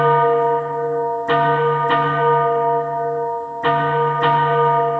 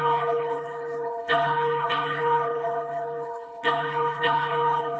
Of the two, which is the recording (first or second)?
first